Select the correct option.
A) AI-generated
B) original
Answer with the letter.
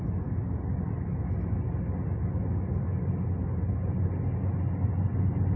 B